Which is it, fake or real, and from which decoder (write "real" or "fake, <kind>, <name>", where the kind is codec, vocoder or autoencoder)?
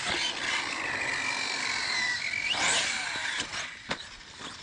real